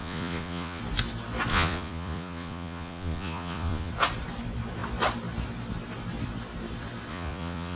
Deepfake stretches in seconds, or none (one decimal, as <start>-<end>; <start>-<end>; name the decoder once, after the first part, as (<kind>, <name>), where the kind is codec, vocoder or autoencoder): 0.0-0.8 (vocoder, Vocos); 1.5-3.9; 7.1-7.8